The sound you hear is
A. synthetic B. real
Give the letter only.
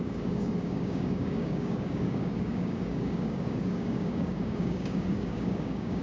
A